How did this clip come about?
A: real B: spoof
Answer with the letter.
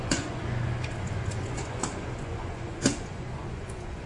B